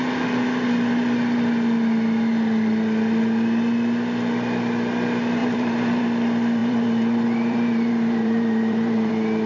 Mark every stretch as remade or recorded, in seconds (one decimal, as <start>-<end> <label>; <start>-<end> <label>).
0.0-5.4 recorded; 5.4-6.0 remade; 6.0-6.6 recorded; 6.6-9.1 remade; 9.1-9.5 recorded